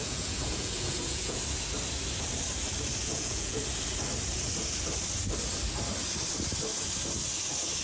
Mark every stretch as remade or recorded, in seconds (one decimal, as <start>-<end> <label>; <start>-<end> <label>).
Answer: 0.0-1.4 remade; 1.4-3.0 recorded; 3.0-3.6 remade; 3.6-7.8 recorded